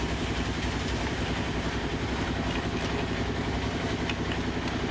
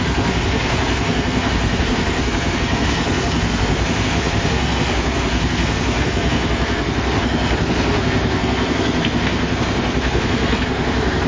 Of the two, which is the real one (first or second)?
first